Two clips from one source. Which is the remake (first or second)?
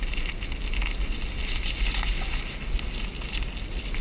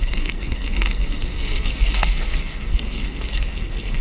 second